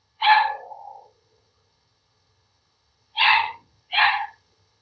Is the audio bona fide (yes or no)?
no